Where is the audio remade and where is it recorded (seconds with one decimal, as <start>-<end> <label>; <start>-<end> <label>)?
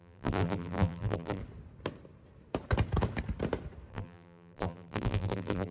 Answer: 0.0-1.4 remade; 1.4-3.9 recorded; 3.9-5.7 remade